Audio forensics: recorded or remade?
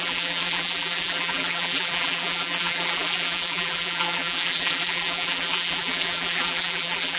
remade